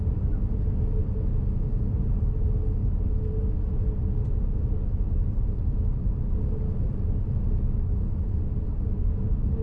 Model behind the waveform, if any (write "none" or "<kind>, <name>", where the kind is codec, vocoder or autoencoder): none